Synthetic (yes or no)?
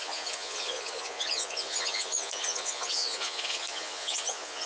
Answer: yes